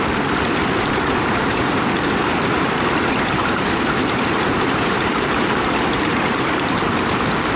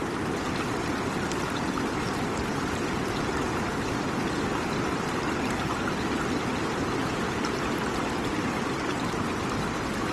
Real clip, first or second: second